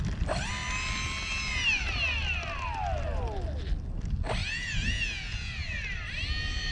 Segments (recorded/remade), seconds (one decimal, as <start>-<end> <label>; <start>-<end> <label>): 0.0-4.4 recorded; 4.4-5.5 remade; 5.5-6.7 recorded